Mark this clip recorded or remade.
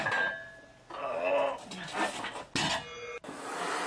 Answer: recorded